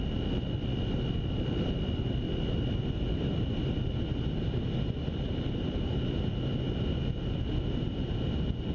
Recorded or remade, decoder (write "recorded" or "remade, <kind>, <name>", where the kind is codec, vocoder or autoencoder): recorded